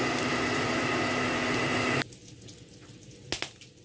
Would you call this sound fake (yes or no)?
no